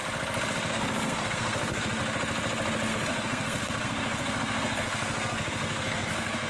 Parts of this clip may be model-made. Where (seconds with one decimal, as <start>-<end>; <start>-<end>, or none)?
0.7-2.0; 2.9-6.5